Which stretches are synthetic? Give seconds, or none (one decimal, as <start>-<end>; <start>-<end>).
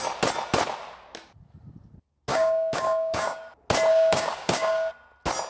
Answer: 2.3-3.4; 3.9-4.9